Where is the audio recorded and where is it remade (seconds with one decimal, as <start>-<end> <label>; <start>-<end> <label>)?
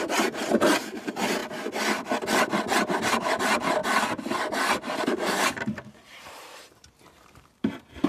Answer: 0.0-1.4 remade; 1.4-3.0 recorded; 3.0-8.1 remade